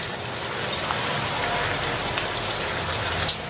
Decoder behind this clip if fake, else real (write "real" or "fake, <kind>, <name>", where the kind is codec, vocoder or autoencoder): real